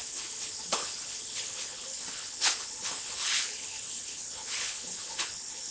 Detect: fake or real fake